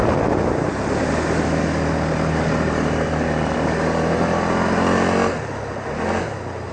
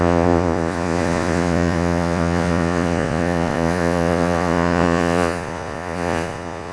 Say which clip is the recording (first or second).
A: first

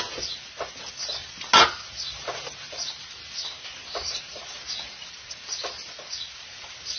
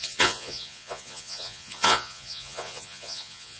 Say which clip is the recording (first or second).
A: first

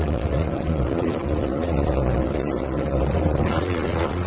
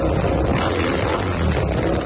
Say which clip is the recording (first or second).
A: second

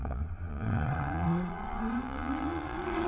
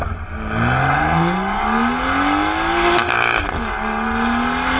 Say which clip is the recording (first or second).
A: second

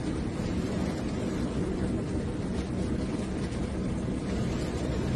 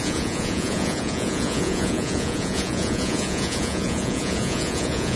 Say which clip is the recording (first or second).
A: first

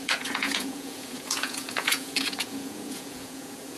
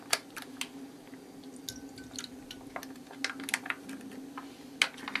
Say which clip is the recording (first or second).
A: second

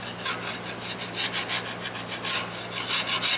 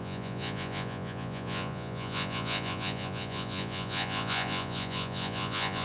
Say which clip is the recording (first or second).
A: first